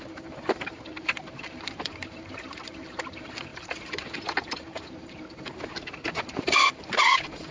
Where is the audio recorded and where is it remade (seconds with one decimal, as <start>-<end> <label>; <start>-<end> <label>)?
0.0-7.5 remade